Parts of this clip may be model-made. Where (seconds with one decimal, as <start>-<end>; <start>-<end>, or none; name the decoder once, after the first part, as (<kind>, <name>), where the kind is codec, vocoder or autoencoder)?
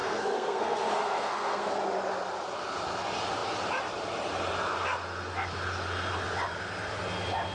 0.0-1.7 (codec, SNAC)